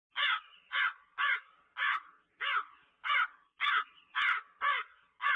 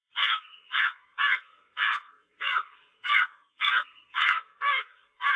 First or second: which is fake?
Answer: second